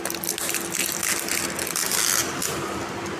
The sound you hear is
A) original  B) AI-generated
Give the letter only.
A